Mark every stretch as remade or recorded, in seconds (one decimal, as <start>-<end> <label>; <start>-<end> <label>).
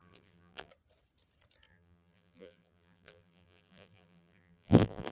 0.0-0.7 remade; 0.7-1.7 recorded; 1.7-5.1 remade